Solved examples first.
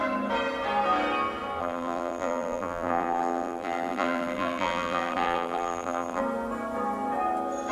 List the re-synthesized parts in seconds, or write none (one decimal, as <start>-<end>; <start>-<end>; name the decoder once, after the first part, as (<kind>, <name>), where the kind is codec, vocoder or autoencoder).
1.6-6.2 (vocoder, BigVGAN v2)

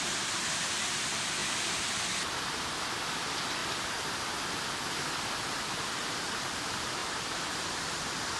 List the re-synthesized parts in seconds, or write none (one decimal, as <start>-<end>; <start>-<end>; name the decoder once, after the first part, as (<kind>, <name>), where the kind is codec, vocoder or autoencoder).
7.0-8.0 (vocoder, BigVGAN v2)

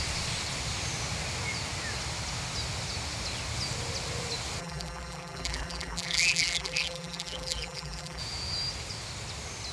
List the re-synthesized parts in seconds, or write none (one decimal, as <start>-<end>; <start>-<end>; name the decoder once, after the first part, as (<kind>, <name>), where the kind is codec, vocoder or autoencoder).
4.6-8.2 (vocoder, BigVGAN v2)

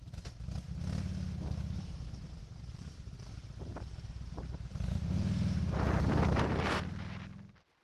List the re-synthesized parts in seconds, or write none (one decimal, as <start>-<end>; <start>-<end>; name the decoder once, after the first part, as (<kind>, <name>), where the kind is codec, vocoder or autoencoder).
2.4-3.3 (vocoder, BigVGAN v2); 3.7-6.9